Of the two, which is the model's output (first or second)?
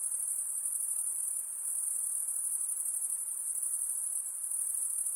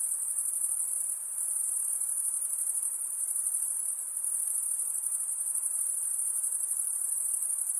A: first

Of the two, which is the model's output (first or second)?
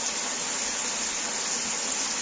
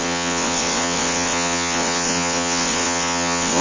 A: second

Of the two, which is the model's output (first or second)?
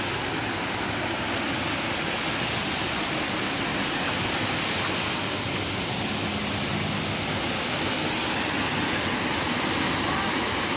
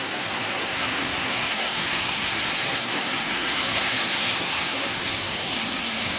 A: second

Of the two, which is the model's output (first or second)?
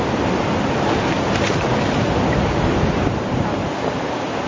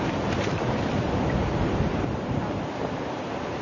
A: second